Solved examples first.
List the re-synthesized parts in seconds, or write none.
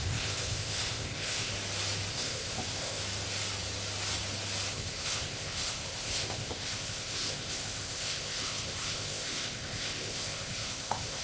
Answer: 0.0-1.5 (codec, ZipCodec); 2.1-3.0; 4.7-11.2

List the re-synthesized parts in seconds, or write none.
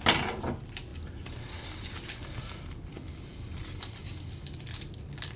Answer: none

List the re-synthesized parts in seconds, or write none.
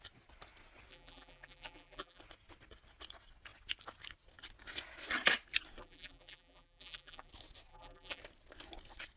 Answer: 0.9-2.2 (vocoder, BigVGAN v2); 5.8-7.3; 7.7-8.2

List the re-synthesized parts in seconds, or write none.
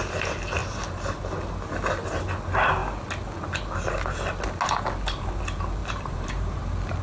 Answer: 5.8-6.6 (vocoder, BigVGAN v2)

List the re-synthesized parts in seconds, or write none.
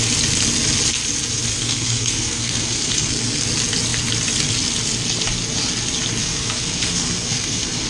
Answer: 1.5-3.4 (codec, SNAC); 6.2-7.9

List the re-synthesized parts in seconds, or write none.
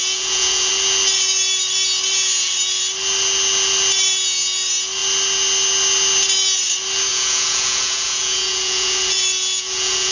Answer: 0.0-0.7 (vocoder, Vocos); 7.1-10.1